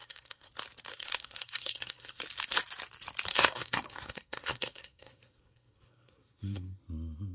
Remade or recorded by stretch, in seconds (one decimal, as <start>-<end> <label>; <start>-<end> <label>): 0.0-0.5 remade; 0.5-0.9 recorded; 0.9-2.2 remade; 2.2-3.3 recorded; 3.3-6.8 remade; 6.8-7.3 recorded